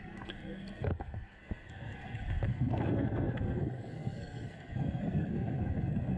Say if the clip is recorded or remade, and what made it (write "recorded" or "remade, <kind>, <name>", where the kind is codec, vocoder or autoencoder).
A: remade, codec, SNAC